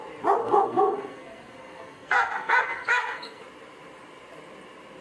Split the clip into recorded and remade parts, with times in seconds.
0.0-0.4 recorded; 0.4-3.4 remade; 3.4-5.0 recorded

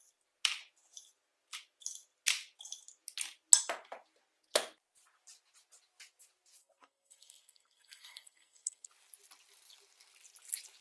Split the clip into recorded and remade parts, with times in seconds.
0.0-6.6 recorded; 6.6-8.9 remade; 8.9-10.8 recorded

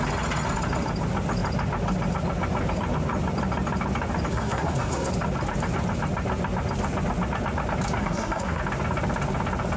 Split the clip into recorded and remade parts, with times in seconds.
0.0-4.3 recorded; 4.3-5.1 remade; 5.1-8.0 recorded; 8.0-8.6 remade; 8.6-9.8 recorded

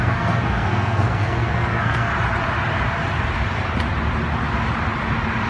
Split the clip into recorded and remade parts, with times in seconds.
0.0-2.1 remade; 2.1-5.5 recorded

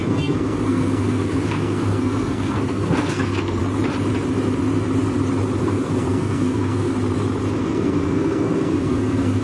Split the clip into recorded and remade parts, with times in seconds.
0.0-3.6 remade; 3.6-5.6 recorded; 5.6-6.9 remade; 6.9-7.6 recorded; 7.6-9.4 remade

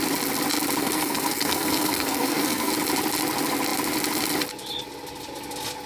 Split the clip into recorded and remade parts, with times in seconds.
0.0-0.8 recorded; 0.8-2.7 remade; 2.7-5.9 recorded

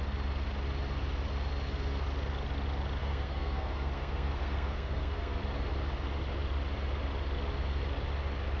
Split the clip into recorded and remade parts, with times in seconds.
0.0-3.0 recorded; 3.0-5.4 remade; 5.4-8.6 recorded